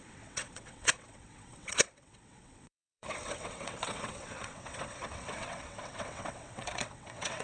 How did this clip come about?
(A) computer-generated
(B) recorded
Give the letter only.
A